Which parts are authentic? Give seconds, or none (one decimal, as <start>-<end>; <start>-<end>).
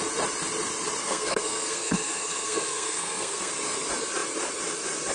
0.0-1.0; 3.5-5.1